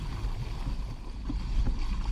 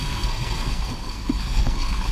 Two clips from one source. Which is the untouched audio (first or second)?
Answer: first